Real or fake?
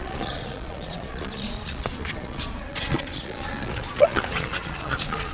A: fake